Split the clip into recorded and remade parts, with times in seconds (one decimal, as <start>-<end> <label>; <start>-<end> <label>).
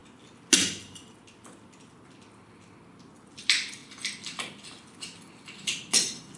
0.0-6.4 recorded